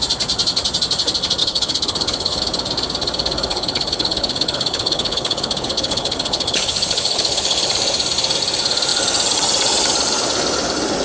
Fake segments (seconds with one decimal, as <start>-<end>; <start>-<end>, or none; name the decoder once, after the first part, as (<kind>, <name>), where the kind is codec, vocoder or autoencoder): 1.4-2.4 (codec, HILCodec); 3.5-7.7